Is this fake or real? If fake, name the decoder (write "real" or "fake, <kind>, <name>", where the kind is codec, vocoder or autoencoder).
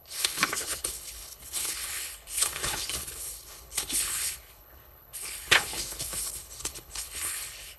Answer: fake, codec, HILCodec